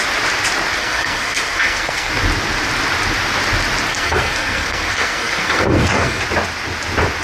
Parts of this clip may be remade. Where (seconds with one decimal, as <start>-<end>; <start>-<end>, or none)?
0.8-2.1; 3.9-6.2